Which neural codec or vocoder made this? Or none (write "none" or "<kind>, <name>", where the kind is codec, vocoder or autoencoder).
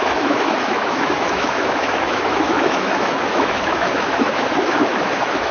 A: autoencoder, DAC-VAE